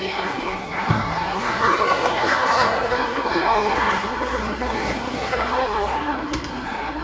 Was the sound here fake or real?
fake